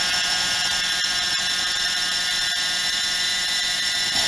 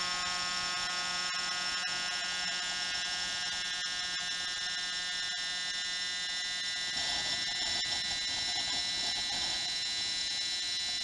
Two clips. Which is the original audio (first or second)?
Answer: second